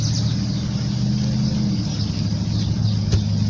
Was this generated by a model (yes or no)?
no